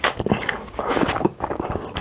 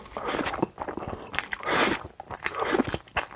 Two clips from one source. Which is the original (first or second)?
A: second